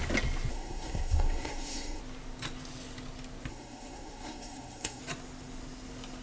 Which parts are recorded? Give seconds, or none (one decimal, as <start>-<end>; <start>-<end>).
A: 0.0-0.5; 2.0-3.5; 5.0-6.2